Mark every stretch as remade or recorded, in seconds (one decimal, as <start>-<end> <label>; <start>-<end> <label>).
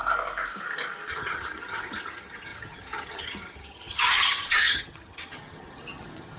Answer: 0.0-1.1 recorded; 1.1-6.4 remade